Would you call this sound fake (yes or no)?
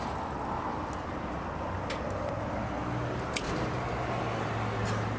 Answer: no